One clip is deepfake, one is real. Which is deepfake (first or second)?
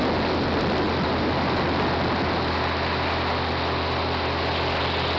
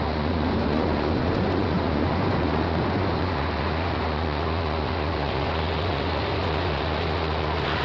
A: second